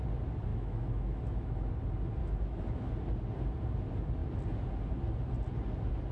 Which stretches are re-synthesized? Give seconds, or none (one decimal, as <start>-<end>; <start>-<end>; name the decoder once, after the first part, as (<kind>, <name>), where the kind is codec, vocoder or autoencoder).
0.5-1.7 (autoencoder, DAC-VAE); 2.2-2.9